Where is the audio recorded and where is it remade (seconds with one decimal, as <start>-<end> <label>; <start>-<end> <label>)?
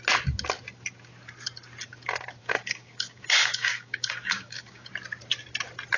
0.0-2.4 recorded; 2.4-4.9 remade; 4.9-6.0 recorded